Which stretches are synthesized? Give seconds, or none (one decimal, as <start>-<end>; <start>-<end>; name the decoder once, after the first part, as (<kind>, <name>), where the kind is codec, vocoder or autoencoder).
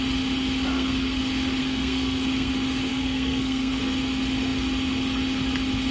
0.7-1.2 (codec, SNAC); 1.6-2.5; 2.9-3.8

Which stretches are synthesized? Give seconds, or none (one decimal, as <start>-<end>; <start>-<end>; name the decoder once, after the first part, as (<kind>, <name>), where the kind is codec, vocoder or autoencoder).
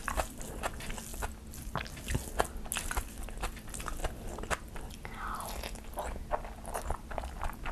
none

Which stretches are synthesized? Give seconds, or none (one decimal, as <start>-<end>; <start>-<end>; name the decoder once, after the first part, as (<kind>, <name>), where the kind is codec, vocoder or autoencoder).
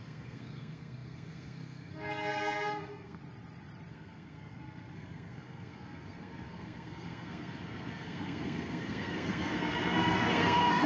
0.0-3.2 (codec, SNAC); 3.9-10.9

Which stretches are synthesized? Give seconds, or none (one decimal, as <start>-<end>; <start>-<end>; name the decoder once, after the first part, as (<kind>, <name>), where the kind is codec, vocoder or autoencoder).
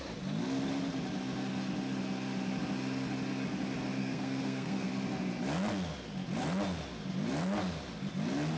4.0-4.9 (codec, SNAC)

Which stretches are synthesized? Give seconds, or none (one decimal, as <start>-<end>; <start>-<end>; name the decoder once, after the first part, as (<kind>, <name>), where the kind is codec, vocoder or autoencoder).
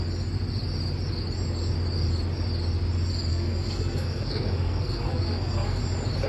3.3-5.8 (codec, SNAC)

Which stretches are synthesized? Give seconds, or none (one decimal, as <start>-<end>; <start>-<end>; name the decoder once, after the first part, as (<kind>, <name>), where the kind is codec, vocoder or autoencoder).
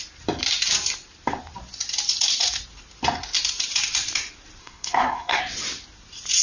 4.6-5.4 (codec, SNAC)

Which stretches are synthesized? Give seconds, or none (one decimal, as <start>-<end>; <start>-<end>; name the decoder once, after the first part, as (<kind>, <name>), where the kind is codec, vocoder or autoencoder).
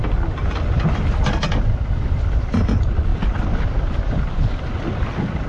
none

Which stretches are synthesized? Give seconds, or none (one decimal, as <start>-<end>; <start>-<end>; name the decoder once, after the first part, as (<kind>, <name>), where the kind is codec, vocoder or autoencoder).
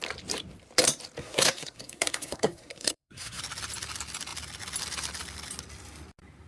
1.2-3.4 (codec, SNAC)